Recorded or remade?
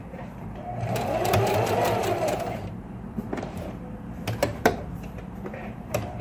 remade